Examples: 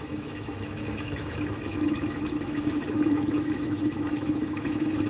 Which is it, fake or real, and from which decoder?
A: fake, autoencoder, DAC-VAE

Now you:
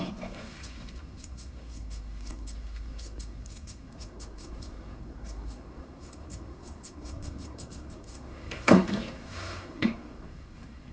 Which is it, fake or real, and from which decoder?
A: fake, codec, SNAC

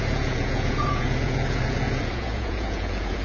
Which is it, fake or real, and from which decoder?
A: fake, vocoder, Vocos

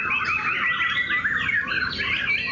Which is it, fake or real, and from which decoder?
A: real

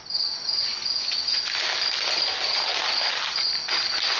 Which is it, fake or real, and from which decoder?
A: real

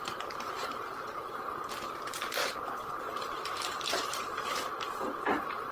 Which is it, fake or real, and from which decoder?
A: fake, vocoder, BigVGAN v2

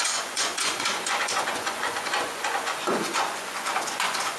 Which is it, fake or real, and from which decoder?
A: fake, vocoder, Vocos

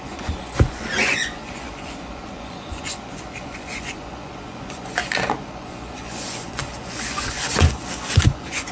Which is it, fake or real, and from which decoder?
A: fake, vocoder, Vocos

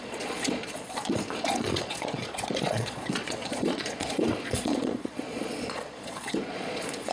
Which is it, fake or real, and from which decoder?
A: fake, vocoder, Vocos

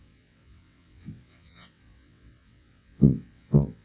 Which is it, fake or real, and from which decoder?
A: fake, vocoder, WaveNeXt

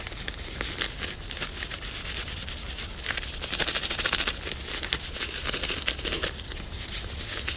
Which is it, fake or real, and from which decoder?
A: real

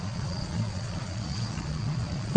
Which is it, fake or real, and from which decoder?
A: fake, vocoder, Vocos